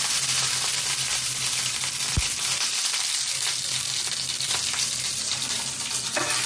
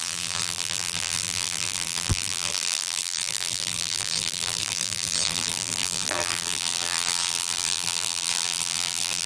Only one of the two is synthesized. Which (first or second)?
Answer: second